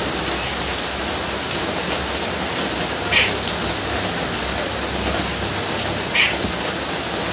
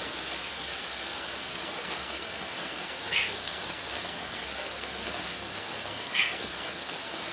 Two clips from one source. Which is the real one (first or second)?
first